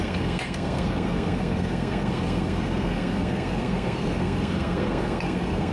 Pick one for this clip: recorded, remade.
remade